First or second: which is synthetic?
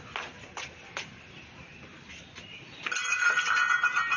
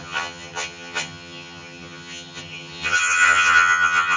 second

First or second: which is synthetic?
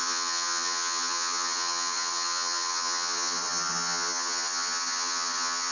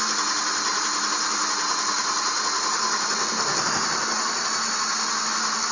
first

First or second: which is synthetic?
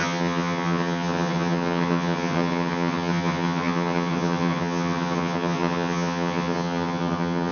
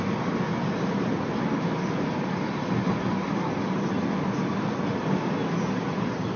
first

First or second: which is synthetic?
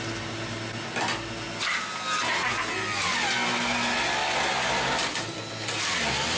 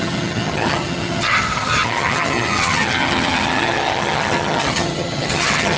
second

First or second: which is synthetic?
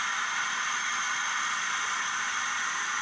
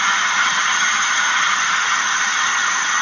second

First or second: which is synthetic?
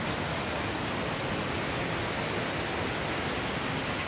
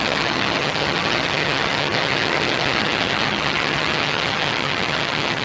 second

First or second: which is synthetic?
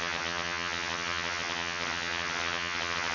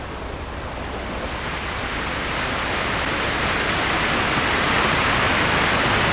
first